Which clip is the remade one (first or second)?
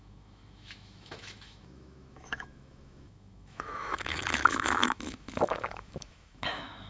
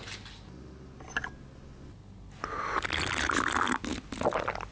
first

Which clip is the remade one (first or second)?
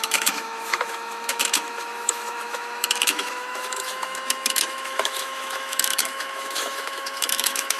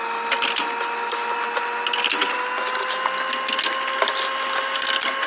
first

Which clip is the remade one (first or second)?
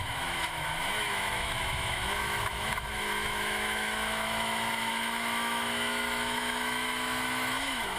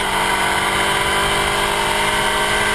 first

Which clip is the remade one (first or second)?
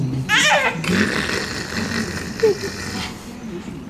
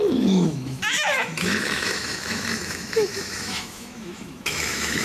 second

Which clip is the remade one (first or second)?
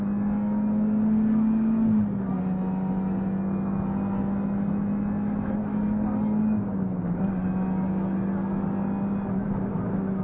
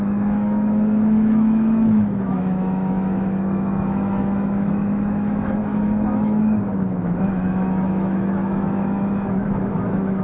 second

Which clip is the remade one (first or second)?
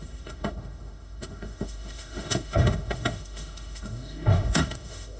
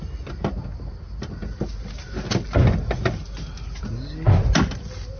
first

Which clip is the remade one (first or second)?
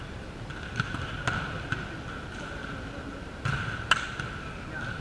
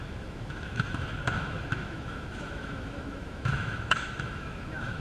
second